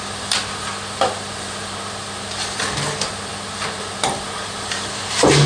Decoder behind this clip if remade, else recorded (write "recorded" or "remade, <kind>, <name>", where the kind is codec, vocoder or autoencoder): remade, vocoder, BigVGAN v2